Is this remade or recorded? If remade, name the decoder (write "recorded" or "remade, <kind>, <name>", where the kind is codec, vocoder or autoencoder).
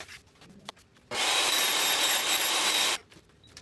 remade, vocoder, BigVGAN v2